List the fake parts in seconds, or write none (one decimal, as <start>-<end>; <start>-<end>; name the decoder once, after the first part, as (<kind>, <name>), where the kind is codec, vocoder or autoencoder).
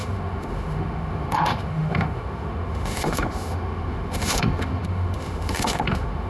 0.0-6.3 (autoencoder, DAC-VAE)